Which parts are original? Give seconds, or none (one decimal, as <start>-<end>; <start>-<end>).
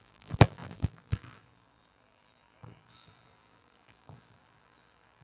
none